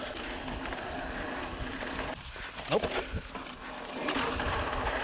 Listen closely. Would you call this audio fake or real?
real